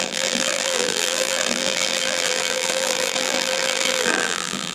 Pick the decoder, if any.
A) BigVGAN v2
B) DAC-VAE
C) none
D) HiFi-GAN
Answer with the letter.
A